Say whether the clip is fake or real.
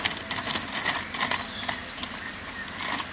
real